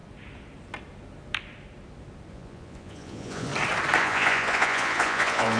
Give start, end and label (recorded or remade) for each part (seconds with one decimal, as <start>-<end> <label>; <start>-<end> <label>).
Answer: 0.0-2.3 recorded; 2.3-3.5 remade; 3.5-4.0 recorded; 4.0-5.6 remade